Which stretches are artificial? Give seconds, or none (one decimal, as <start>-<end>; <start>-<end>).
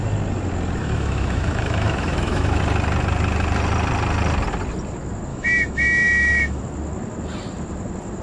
0.8-2.6; 5.3-6.6